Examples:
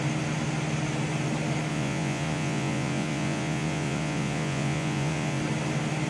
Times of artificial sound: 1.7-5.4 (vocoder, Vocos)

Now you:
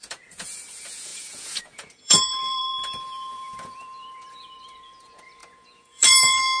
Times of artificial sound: 0.0-6.6 (vocoder, Vocos)

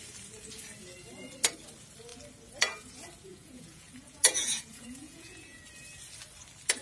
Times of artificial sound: 3.3-5.6 (vocoder, Vocos)

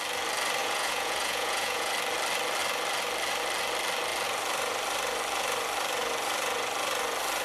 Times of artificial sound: 0.6-1.9 (vocoder, Vocos)